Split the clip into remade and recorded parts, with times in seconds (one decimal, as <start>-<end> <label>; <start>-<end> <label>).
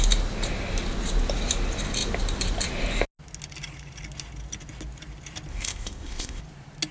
0.0-5.5 recorded; 5.5-6.4 remade; 6.4-6.9 recorded